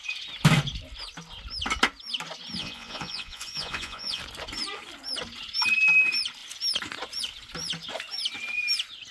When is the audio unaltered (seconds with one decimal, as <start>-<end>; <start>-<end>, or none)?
0.0-2.6; 4.2-9.1